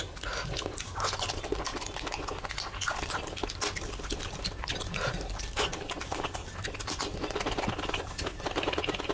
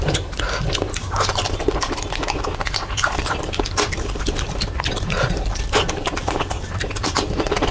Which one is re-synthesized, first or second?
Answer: second